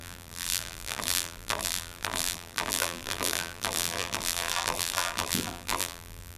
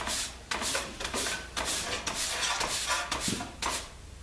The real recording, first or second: second